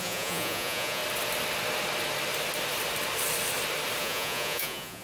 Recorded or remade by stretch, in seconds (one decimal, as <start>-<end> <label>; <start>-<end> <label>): 0.0-1.0 remade; 1.0-4.0 recorded; 4.0-5.0 remade